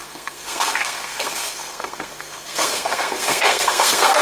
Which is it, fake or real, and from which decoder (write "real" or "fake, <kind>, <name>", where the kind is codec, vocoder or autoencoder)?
fake, codec, SNAC